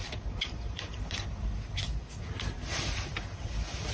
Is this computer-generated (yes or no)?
no